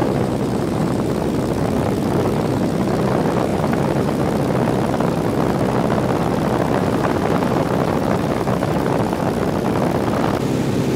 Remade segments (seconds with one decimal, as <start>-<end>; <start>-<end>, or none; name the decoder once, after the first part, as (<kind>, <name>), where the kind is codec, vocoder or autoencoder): 0.0-1.1 (vocoder, BigVGAN v2); 3.5-4.3; 6.8-9.2